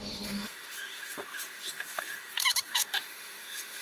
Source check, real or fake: fake